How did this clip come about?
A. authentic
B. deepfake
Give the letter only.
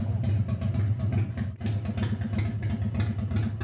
A